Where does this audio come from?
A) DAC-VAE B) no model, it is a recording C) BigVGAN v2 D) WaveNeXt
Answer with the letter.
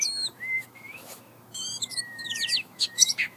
A